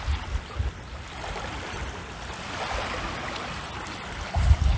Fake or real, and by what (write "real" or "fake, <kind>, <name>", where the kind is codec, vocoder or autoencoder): real